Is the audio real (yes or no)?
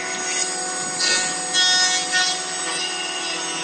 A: yes